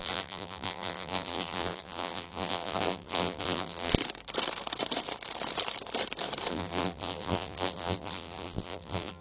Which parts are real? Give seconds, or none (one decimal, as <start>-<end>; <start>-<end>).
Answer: 3.9-6.5